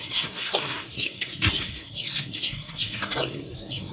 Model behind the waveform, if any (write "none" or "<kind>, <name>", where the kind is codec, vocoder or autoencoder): codec, SNAC